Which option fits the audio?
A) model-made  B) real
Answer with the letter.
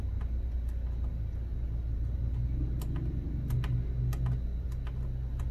B